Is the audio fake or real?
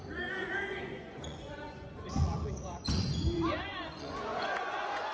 fake